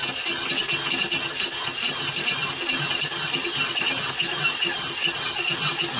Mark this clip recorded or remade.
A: recorded